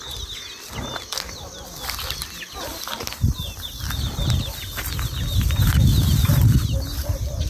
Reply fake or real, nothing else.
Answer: real